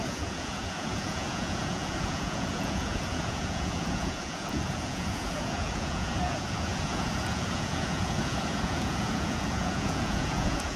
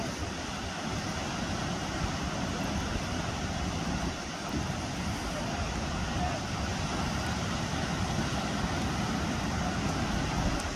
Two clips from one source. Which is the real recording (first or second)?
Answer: second